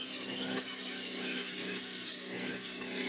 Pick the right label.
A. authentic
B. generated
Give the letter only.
B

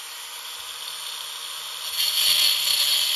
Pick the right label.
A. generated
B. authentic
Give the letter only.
B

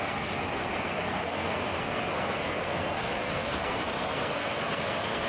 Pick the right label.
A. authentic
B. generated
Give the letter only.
B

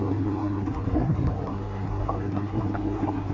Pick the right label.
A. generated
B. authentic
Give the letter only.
A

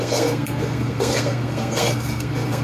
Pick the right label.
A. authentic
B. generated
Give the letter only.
B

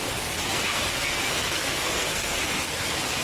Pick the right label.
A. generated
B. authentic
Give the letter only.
A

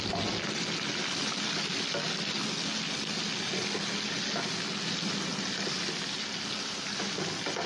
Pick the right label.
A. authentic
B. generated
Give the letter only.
A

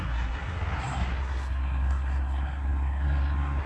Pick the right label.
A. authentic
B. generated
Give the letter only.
B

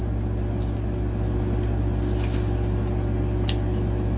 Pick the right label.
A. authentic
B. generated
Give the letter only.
A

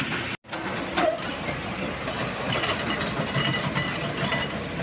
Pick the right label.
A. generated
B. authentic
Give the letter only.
B